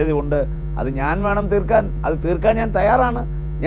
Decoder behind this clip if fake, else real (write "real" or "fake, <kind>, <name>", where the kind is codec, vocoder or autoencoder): fake, vocoder, Vocos